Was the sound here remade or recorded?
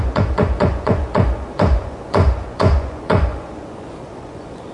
remade